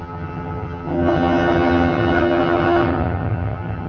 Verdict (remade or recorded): remade